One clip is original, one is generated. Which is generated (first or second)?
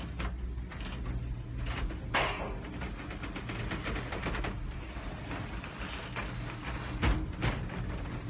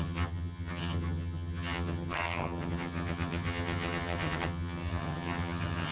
second